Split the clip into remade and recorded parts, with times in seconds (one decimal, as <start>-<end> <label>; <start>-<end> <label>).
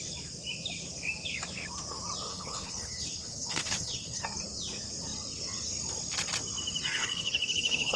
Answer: 0.0-2.3 recorded; 2.3-4.2 remade; 4.2-6.9 recorded; 6.9-8.0 remade